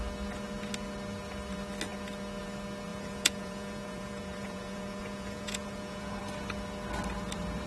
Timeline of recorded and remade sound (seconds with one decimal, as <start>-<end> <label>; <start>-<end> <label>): 0.0-2.9 recorded; 2.9-6.2 remade; 6.2-7.7 recorded